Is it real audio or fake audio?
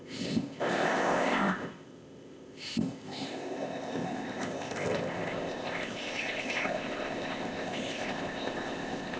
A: fake